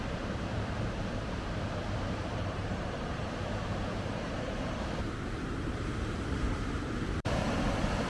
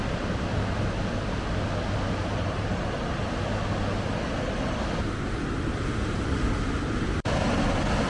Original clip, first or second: second